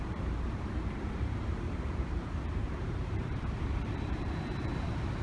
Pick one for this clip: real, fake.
fake